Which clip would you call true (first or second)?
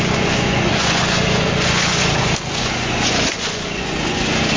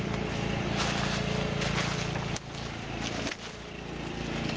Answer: second